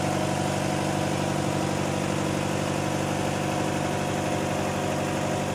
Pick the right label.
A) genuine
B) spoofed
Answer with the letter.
A